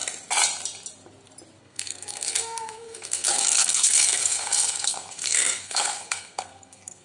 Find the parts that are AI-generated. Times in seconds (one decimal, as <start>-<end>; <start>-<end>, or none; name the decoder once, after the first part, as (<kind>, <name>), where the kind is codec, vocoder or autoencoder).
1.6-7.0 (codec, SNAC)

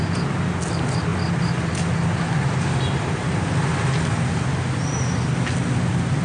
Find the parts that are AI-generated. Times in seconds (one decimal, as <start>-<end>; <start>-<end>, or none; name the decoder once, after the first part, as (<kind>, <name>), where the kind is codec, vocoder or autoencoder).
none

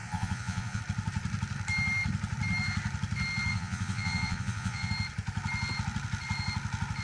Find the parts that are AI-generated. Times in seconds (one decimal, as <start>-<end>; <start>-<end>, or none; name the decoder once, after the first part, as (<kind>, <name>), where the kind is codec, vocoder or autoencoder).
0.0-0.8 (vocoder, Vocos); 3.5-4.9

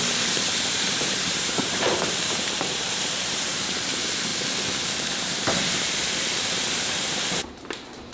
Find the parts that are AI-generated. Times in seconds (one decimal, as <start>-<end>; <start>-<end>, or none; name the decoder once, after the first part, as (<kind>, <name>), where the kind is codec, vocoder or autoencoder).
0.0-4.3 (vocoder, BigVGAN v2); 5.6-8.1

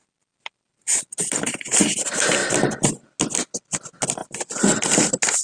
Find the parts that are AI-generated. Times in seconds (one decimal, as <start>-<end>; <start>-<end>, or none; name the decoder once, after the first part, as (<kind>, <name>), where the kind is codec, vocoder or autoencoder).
none

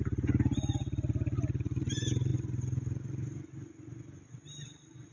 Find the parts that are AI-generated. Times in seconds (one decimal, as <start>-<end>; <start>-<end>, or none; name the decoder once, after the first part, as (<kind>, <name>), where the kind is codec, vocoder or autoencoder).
none